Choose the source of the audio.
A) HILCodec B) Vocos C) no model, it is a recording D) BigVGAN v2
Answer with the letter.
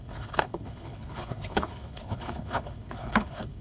A